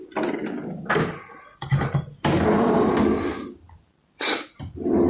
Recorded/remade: recorded